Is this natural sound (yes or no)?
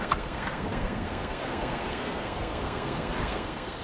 no